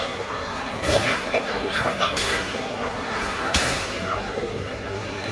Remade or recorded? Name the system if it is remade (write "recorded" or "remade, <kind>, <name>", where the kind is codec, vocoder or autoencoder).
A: remade, codec, SNAC